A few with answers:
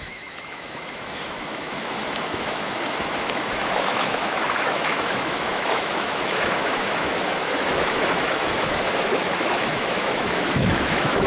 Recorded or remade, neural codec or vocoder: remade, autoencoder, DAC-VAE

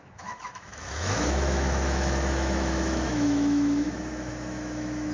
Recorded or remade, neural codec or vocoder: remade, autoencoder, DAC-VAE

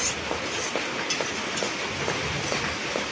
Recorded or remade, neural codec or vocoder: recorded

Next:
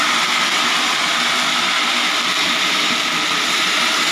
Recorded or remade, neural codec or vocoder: recorded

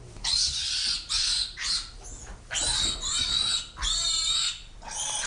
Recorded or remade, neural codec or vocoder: recorded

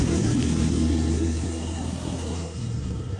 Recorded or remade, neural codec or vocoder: remade, codec, SNAC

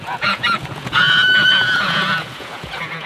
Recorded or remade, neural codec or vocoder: remade, vocoder, Vocos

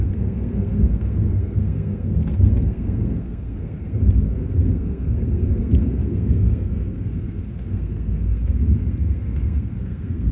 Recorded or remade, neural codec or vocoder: remade, codec, SNAC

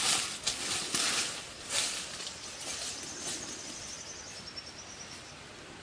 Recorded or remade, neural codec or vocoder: recorded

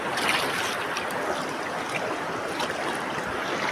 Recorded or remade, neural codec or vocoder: recorded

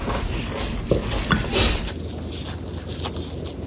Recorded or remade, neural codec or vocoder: recorded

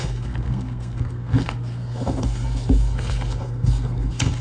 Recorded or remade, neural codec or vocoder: remade, codec, SNAC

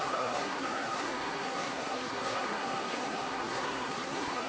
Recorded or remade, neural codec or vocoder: remade, codec, SNAC